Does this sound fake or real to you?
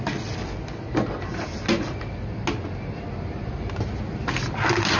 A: real